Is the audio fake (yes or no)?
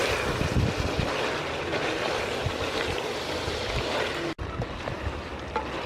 no